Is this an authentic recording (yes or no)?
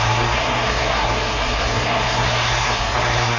no